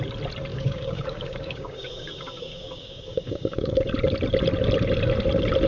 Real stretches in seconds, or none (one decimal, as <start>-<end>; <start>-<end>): 0.0-0.5; 3.9-5.7

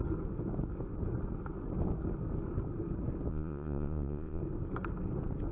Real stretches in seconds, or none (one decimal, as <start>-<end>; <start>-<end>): 0.0-3.3; 4.4-5.5